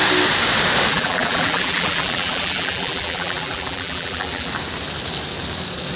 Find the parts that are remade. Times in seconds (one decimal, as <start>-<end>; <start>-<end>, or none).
0.9-4.5